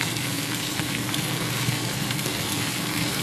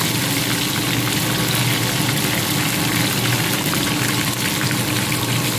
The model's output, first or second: first